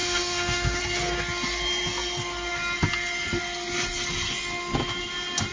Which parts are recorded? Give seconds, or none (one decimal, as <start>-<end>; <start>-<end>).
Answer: 0.8-5.5

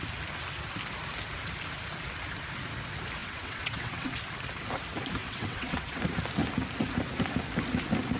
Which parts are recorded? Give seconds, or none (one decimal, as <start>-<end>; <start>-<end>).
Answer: 0.0-3.2; 4.1-5.2; 6.0-8.2